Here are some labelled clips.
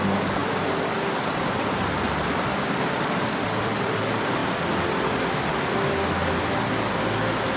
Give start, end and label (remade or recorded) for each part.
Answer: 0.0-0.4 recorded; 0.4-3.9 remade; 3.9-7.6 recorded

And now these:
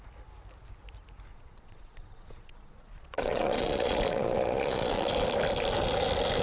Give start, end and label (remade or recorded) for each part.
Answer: 0.0-1.3 recorded; 1.3-5.1 remade; 5.1-6.4 recorded

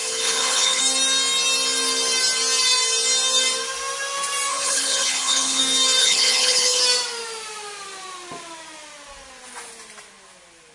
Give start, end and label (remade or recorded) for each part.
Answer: 0.0-0.8 remade; 0.8-4.5 recorded; 4.5-5.6 remade; 5.6-6.0 recorded; 6.0-6.8 remade; 6.8-10.7 recorded

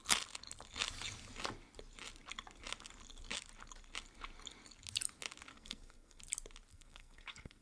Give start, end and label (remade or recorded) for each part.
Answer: 0.0-5.5 recorded; 5.5-6.2 remade; 6.2-6.7 recorded; 6.7-7.6 remade

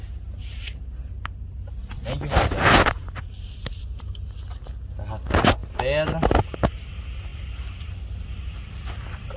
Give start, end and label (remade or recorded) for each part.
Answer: 0.0-1.8 recorded; 1.8-3.3 remade; 3.3-9.4 recorded

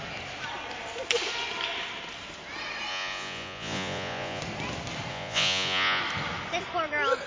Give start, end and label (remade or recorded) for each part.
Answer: 0.0-2.9 recorded; 2.9-4.4 remade; 4.4-5.1 recorded; 5.1-6.0 remade; 6.0-7.3 recorded

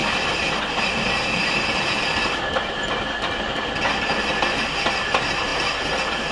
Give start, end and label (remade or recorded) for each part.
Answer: 0.0-6.3 recorded